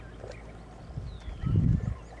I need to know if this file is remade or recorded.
recorded